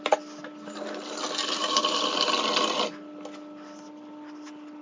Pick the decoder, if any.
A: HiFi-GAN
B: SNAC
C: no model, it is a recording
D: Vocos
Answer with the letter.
C